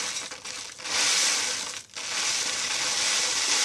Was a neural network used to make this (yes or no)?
no